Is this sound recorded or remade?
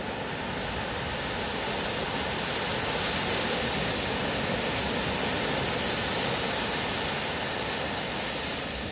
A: recorded